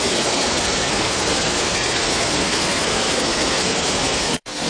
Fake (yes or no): yes